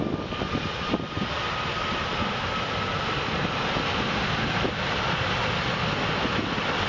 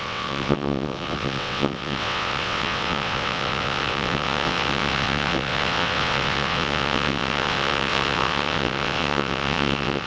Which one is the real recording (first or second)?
first